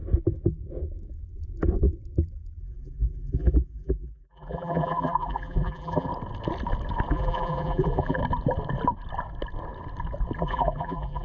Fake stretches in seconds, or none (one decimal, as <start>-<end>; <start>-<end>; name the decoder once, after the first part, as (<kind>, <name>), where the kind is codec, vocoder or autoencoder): 2.6-6.1 (vocoder, BigVGAN v2); 7.1-8.2; 10.4-11.2